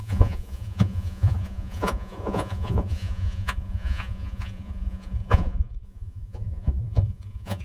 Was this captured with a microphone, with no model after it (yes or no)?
no